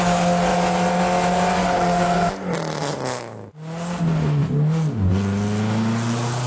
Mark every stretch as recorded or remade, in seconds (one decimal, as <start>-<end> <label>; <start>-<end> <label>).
0.0-6.5 recorded